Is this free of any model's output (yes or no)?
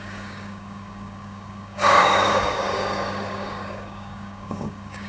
no